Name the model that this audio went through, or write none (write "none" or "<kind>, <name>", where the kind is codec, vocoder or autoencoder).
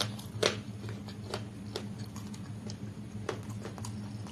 none